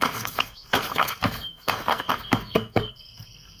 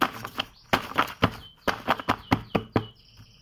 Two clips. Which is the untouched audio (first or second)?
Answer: second